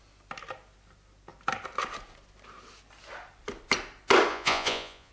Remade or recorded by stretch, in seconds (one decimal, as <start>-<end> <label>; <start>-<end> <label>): 0.0-4.3 recorded; 4.3-5.1 remade